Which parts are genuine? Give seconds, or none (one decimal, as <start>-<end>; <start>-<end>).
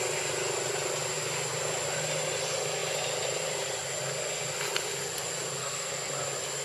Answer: 0.0-5.6; 6.1-6.6